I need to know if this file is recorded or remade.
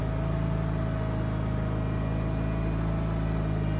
recorded